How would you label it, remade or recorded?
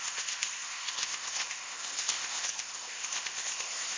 remade